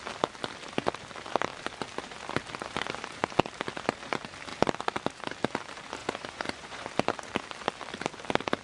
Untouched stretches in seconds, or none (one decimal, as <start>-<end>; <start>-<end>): 0.0-6.0; 6.9-8.6